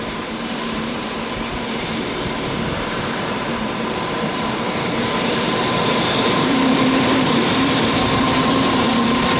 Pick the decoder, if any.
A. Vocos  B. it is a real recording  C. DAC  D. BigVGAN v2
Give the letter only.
D